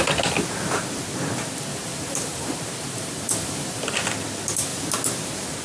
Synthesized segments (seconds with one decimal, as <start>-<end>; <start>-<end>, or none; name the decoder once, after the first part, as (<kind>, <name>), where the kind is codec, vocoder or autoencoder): 1.7-3.9 (vocoder, BigVGAN v2)